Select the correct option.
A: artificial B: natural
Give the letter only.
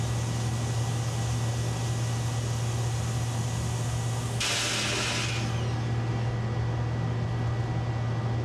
B